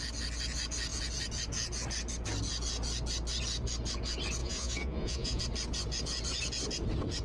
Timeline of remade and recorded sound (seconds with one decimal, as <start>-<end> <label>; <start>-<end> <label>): 0.0-4.4 recorded; 4.4-5.4 remade; 5.4-7.2 recorded